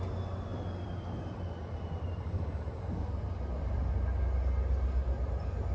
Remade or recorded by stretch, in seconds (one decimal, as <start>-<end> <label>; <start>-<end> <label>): 0.0-0.5 recorded; 0.5-3.9 remade; 3.9-5.7 recorded